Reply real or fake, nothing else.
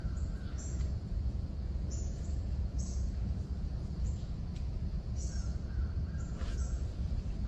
fake